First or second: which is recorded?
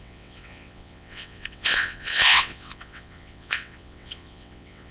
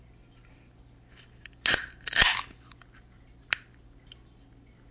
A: second